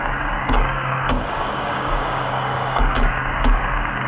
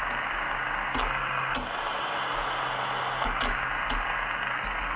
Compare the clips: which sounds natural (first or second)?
second